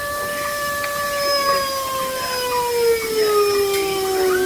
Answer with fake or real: real